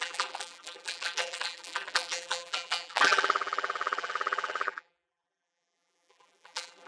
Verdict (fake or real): fake